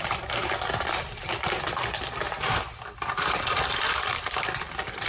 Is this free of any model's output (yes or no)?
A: no